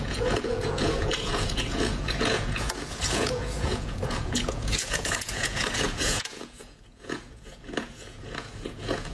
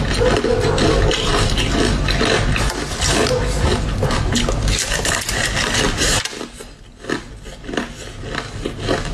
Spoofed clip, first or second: first